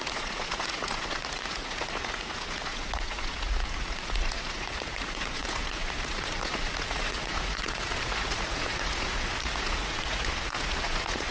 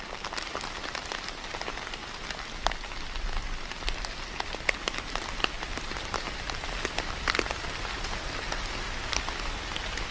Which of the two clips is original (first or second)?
second